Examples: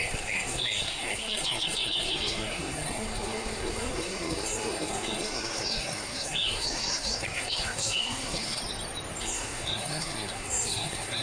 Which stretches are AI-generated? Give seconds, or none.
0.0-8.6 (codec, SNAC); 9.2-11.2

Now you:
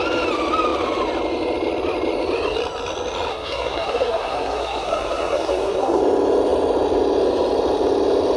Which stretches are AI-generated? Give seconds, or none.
3.3-6.0 (codec, SNAC)

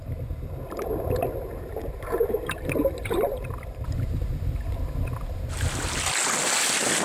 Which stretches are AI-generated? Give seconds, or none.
1.8-4.3 (vocoder, BigVGAN v2)

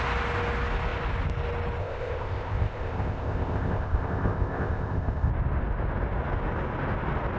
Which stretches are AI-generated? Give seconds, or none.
1.8-5.3 (codec, ZipCodec)

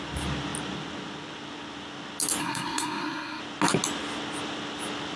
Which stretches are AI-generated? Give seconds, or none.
2.4-3.4 (codec, SNAC)

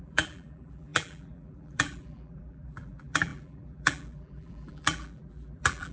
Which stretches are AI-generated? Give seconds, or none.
0.0-5.9 (vocoder, BigVGAN v2)

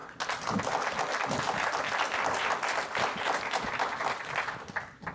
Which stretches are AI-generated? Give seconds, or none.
none